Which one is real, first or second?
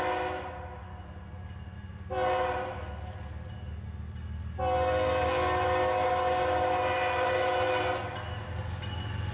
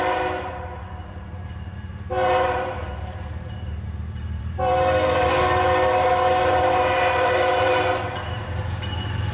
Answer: first